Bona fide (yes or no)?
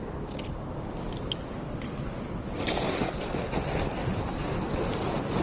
yes